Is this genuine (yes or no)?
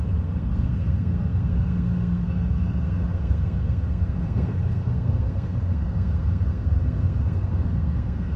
no